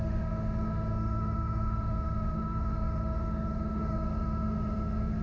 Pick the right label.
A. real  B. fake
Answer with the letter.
B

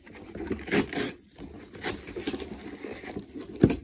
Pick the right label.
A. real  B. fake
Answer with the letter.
A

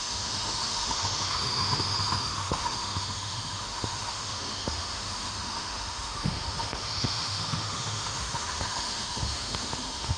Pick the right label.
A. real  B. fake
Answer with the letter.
B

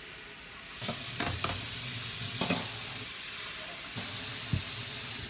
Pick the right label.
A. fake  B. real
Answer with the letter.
B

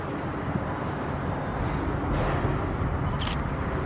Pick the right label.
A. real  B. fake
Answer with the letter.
A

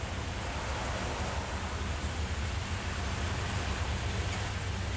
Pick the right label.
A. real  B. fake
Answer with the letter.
A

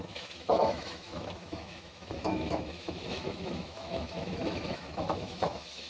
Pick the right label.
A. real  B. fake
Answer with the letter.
B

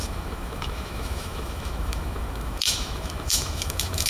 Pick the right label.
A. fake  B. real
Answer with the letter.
A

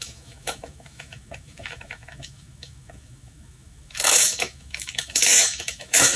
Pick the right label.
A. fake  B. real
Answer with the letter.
A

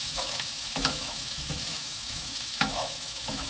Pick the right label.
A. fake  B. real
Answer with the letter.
A